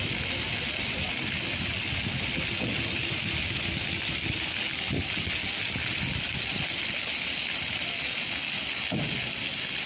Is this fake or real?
real